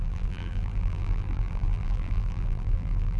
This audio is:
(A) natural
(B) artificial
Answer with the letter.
B